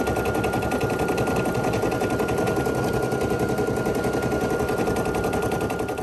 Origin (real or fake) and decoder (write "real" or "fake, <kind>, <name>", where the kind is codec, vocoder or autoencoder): real